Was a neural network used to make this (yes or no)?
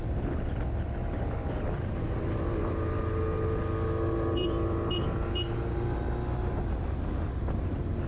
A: no